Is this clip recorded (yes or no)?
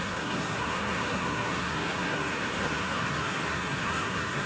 no